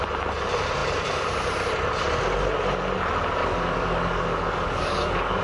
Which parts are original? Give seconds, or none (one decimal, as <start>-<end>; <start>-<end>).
0.0-3.4